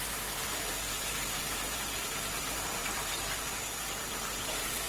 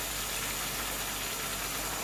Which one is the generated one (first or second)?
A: first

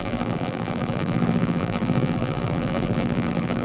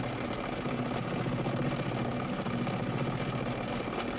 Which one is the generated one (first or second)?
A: first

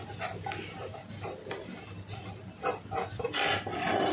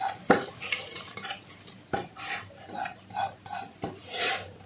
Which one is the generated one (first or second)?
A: second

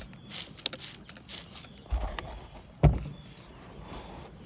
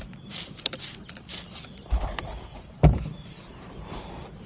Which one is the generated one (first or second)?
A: second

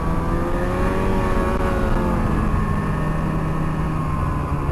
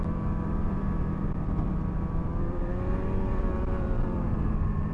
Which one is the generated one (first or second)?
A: second